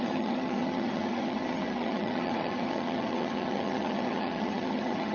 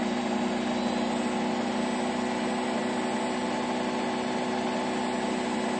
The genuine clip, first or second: second